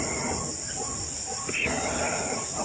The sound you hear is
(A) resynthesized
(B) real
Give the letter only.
B